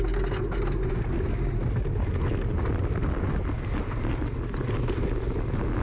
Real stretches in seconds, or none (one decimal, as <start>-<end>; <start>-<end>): 0.0-5.8